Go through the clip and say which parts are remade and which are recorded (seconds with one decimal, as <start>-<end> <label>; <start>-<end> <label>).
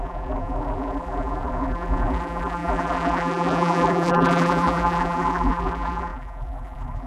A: 0.0-7.1 remade